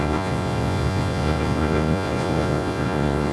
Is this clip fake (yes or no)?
yes